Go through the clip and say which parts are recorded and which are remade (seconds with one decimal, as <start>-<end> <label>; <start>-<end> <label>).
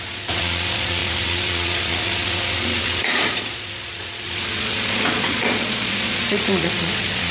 0.0-7.3 remade